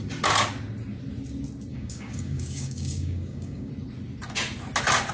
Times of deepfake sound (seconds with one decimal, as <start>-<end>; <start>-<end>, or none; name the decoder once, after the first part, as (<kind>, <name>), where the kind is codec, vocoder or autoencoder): 1.7-3.7 (codec, DAC)